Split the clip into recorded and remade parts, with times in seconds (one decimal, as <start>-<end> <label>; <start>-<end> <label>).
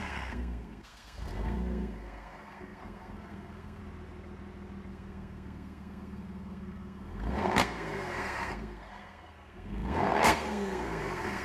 0.0-3.8 remade; 3.8-4.9 recorded; 4.9-11.4 remade